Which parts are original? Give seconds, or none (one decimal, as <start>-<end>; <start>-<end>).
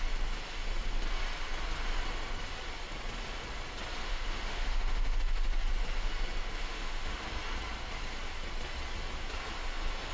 0.0-4.0; 5.2-6.4; 7.2-10.1